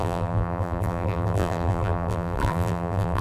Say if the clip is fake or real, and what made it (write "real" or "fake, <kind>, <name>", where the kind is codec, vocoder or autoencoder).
fake, vocoder, BigVGAN v2